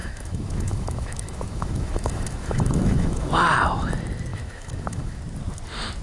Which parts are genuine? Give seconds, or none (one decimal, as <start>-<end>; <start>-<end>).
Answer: 3.3-4.3; 5.2-6.0